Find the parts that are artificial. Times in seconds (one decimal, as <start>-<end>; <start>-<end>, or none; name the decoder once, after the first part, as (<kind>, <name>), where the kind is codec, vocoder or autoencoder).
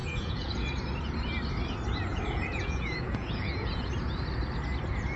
0.0-0.7 (vocoder, Vocos); 2.1-3.9